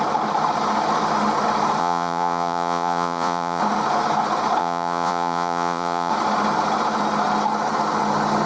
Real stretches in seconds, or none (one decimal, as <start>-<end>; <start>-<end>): 0.0-1.8; 3.6-4.6; 6.1-8.5